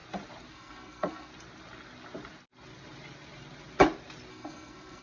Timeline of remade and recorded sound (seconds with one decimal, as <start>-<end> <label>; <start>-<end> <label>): 0.0-0.5 recorded; 0.5-1.3 remade; 1.3-4.3 recorded; 4.3-5.0 remade